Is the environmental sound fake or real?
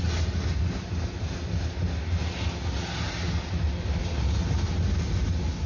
real